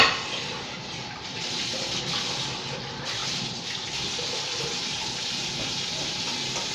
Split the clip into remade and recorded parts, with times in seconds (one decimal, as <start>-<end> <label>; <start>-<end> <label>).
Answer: 0.0-3.2 recorded; 3.2-4.2 remade; 4.2-4.8 recorded; 4.8-5.4 remade; 5.4-6.7 recorded